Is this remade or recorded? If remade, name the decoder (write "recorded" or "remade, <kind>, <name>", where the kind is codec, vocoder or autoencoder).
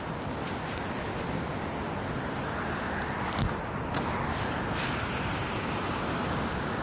recorded